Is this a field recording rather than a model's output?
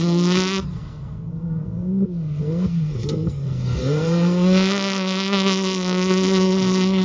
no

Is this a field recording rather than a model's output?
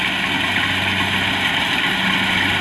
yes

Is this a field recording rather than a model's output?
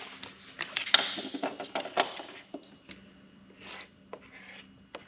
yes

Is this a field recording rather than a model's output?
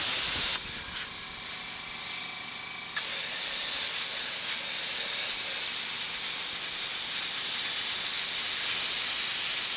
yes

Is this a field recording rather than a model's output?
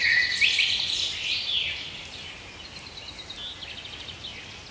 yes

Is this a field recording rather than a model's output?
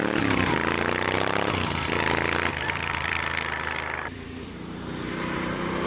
no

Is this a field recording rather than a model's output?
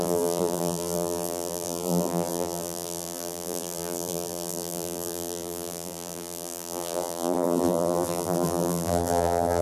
no